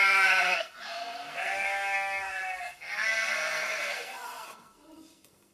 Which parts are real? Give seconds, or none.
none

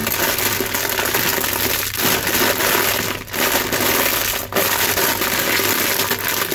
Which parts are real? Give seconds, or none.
0.0-6.5

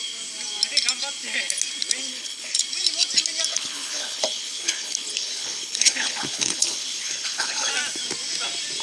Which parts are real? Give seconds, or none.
0.0-2.1; 2.6-3.5; 7.7-8.8

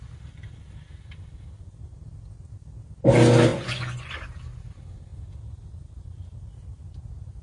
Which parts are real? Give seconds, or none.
0.0-3.5; 4.1-7.4

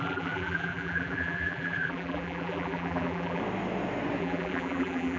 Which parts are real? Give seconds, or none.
3.4-4.2

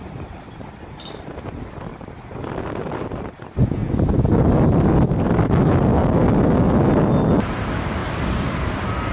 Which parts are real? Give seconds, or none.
0.0-8.0

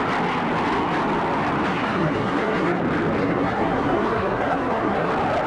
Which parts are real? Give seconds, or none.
0.0-1.7; 2.8-3.2; 5.1-5.5